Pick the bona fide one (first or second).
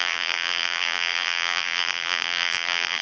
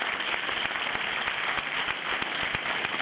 second